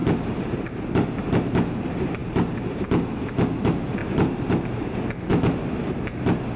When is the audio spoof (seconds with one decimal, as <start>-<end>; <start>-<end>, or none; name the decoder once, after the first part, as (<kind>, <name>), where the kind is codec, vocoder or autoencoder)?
0.0-0.8 (vocoder, BigVGAN v2); 4.0-4.5

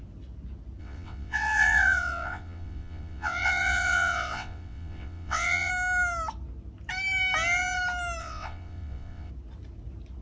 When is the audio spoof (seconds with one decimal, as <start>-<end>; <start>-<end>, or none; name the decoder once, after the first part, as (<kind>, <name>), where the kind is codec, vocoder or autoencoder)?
0.8-5.7 (vocoder, WaveNeXt); 8.2-9.3